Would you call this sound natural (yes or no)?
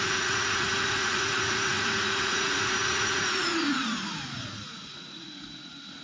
no